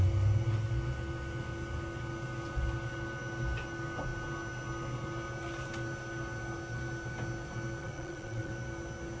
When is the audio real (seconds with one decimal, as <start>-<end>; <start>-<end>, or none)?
0.0-7.8; 8.5-9.2